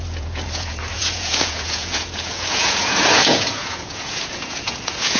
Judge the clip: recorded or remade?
remade